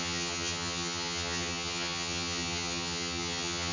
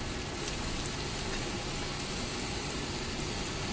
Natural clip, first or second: second